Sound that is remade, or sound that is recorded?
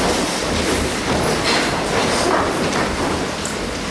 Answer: recorded